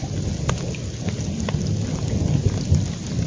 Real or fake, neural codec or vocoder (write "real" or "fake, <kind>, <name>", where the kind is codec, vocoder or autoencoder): real